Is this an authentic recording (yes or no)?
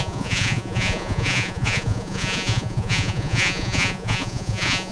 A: no